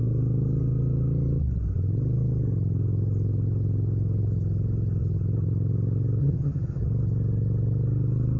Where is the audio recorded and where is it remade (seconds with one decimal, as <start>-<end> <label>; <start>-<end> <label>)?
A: 0.0-6.2 recorded; 6.2-6.8 remade; 6.8-8.4 recorded